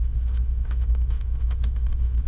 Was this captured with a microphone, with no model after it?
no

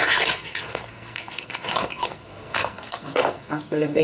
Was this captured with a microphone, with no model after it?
no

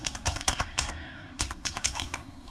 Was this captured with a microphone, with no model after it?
no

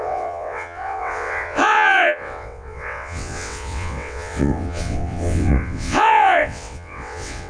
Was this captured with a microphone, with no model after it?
no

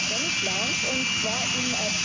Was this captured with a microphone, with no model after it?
yes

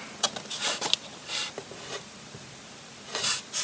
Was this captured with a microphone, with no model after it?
yes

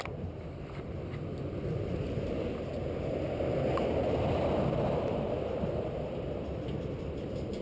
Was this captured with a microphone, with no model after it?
no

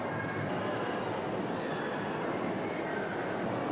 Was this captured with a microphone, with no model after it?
yes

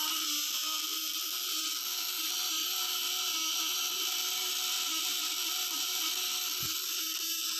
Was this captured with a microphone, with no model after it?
yes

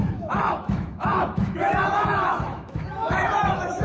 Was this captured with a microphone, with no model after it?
no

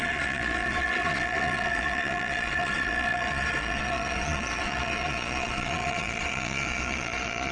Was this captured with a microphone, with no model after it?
no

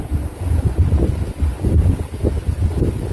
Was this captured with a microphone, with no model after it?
yes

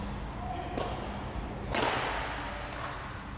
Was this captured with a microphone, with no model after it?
yes